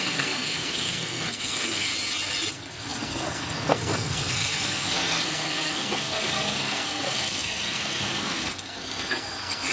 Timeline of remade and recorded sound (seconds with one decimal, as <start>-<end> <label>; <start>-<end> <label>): 0.0-1.9 remade; 1.9-2.5 recorded; 2.5-9.7 remade